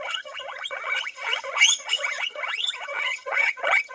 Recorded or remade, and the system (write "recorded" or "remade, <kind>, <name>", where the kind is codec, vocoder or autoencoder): remade, vocoder, HiFi-GAN